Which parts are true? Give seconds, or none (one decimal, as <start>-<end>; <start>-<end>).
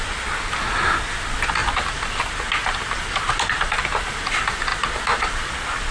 0.0-5.9